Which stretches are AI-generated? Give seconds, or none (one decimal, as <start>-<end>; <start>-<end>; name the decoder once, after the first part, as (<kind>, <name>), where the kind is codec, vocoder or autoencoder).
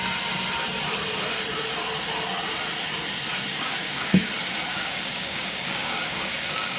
3.5-4.3 (codec, DAC); 4.7-6.8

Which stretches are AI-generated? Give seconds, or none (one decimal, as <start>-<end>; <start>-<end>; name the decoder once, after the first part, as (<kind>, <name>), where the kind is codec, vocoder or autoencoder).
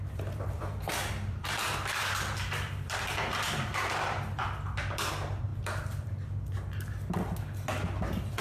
0.0-5.5 (vocoder, BigVGAN v2); 7.4-8.4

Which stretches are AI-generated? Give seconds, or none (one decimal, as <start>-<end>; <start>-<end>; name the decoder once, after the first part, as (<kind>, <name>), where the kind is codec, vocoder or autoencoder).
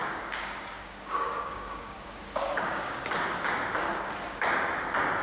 0.0-3.1 (codec, DAC)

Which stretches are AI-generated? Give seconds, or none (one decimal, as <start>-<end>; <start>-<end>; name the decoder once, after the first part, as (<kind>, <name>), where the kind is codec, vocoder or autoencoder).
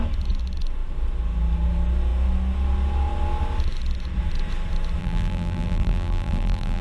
5.0-6.8 (vocoder, BigVGAN v2)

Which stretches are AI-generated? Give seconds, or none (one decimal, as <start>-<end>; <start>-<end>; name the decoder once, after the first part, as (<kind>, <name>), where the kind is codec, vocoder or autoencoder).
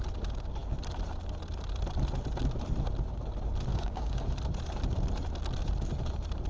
3.7-4.2 (codec, DAC)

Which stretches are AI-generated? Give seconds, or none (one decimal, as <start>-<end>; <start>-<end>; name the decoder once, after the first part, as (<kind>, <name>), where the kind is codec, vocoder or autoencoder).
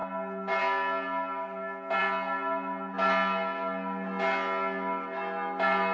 none